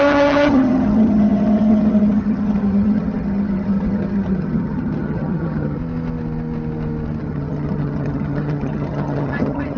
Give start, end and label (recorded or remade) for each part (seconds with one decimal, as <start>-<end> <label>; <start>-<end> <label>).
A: 0.0-5.8 remade; 5.8-7.2 recorded; 7.2-9.8 remade